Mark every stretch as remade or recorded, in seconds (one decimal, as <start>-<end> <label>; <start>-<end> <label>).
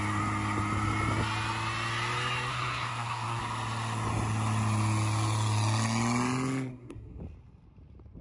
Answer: 0.0-2.5 recorded; 2.5-3.4 remade; 3.4-6.7 recorded; 6.7-7.2 remade; 7.2-8.2 recorded